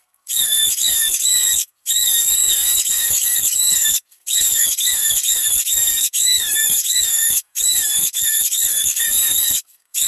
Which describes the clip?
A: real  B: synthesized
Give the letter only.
B